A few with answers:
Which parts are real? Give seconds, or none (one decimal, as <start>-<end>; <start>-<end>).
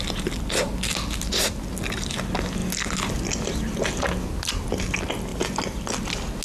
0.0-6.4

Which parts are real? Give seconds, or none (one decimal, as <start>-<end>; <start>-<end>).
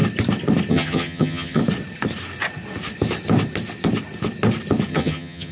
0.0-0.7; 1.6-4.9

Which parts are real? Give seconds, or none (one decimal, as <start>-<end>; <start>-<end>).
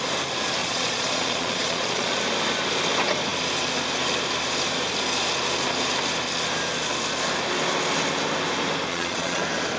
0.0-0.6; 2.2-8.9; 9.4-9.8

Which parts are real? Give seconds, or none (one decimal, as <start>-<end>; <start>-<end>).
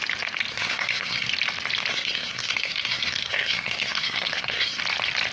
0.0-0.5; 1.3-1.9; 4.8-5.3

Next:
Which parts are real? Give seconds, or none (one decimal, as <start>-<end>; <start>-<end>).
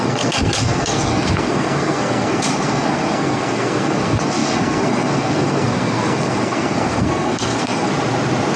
7.9-8.6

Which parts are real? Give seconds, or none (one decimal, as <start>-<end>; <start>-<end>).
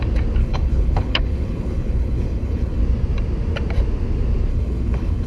0.0-0.4; 2.8-4.5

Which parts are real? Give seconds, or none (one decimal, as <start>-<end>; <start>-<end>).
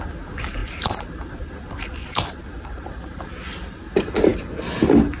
0.0-0.6; 1.3-2.0; 3.3-5.2